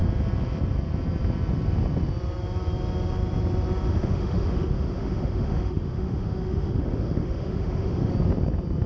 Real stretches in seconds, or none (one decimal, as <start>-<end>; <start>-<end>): 0.0-3.9; 8.1-8.9